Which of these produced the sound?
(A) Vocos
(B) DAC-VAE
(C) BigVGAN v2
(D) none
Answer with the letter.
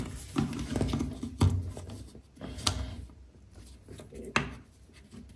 D